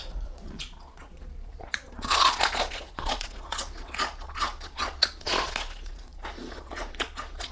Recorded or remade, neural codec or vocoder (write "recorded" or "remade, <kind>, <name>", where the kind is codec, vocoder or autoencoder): remade, vocoder, Vocos